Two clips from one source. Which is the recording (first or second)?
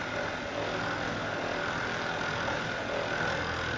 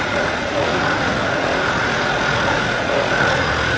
first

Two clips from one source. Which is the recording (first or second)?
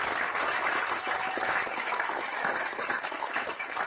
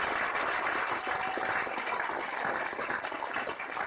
second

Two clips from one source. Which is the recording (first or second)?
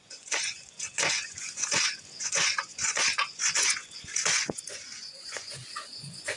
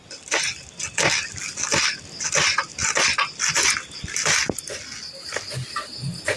second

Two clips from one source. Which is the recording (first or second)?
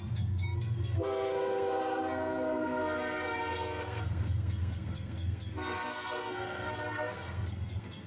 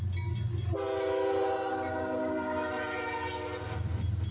second